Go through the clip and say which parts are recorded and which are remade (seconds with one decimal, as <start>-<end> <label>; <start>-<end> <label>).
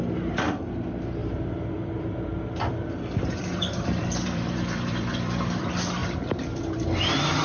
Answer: 0.0-1.2 recorded; 1.2-5.6 remade; 5.6-6.0 recorded; 6.0-7.0 remade; 7.0-7.4 recorded